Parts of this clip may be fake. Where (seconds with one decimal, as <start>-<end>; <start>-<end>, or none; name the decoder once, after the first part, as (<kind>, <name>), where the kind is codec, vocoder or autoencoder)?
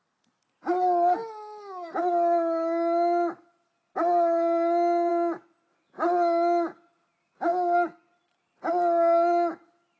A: none